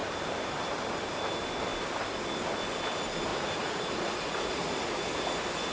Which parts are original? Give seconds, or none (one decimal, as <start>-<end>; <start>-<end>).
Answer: 0.0-3.3; 5.1-5.7